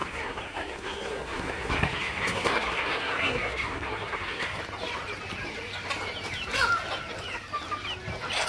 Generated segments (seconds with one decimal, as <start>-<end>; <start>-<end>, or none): 0.0-4.6